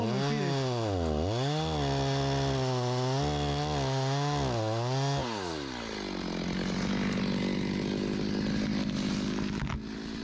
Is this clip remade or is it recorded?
recorded